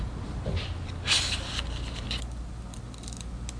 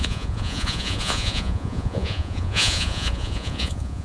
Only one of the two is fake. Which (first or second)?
second